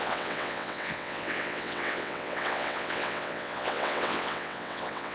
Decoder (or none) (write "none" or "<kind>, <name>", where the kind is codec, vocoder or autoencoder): vocoder, WaveNeXt